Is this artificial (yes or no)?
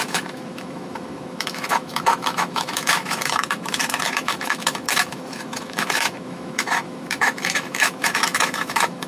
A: yes